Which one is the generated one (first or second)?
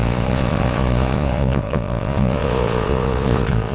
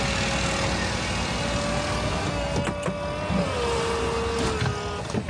first